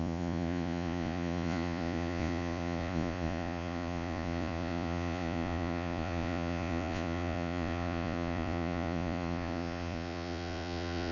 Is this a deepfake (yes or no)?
yes